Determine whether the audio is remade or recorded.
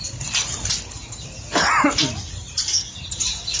recorded